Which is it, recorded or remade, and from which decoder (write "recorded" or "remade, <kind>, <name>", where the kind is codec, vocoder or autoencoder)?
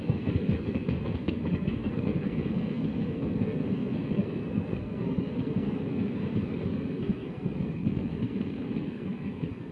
remade, codec, SNAC